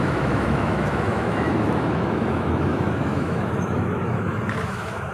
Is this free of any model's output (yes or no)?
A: no